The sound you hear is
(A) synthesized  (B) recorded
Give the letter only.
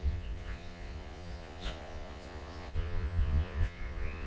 A